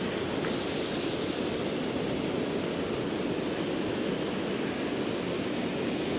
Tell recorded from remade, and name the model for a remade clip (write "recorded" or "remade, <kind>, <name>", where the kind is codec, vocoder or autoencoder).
recorded